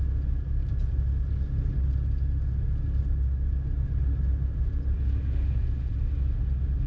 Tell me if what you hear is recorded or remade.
recorded